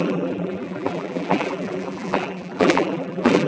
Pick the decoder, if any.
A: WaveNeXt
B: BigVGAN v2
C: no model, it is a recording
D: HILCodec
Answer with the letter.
B